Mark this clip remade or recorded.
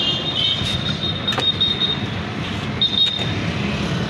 recorded